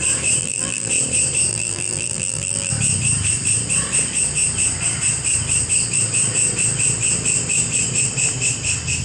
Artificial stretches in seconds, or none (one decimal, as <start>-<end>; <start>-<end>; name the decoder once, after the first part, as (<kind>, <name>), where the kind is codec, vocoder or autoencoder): 0.4-0.9 (vocoder, BigVGAN v2); 1.5-2.7